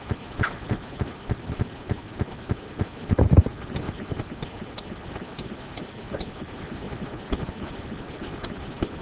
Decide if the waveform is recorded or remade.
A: recorded